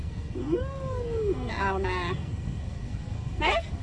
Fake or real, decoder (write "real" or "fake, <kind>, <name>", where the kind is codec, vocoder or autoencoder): fake, codec, SNAC